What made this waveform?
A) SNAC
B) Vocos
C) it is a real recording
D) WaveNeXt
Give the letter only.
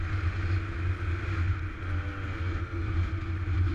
C